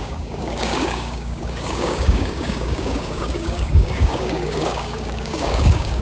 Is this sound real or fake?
fake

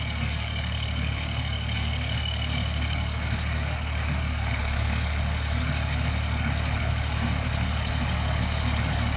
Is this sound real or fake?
fake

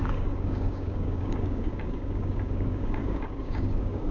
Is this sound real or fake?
fake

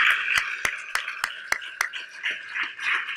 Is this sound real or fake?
real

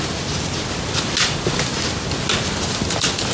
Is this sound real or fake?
real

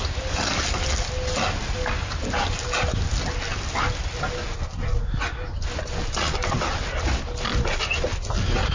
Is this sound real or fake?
real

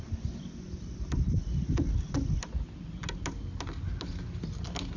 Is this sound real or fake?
real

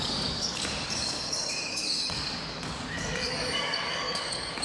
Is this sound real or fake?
fake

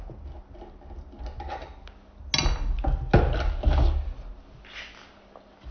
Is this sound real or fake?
real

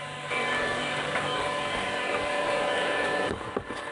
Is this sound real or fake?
fake